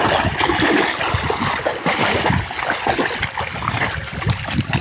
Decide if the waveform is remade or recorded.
recorded